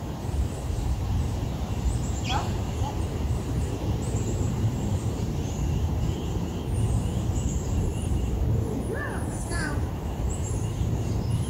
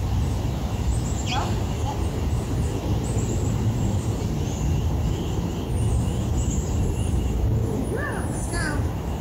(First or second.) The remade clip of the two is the first